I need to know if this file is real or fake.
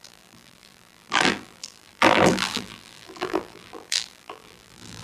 fake